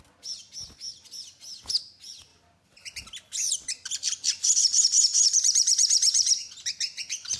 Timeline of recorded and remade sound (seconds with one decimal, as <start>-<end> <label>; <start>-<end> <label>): 0.0-2.3 recorded; 2.3-4.6 remade; 4.6-5.1 recorded; 5.1-6.5 remade; 6.5-7.4 recorded